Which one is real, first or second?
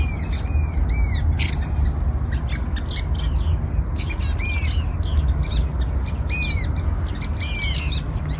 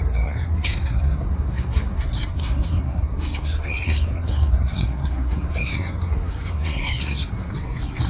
first